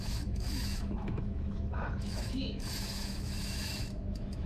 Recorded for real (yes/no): no